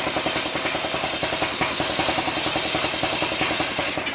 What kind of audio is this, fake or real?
real